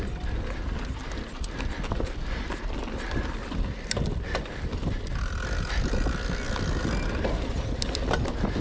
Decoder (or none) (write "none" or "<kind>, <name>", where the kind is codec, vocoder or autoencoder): none